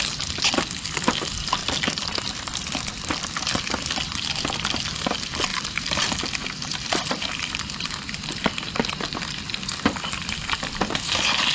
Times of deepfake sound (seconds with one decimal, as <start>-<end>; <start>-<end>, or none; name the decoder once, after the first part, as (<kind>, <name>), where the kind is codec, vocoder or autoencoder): 5.5-8.5 (vocoder, BigVGAN v2)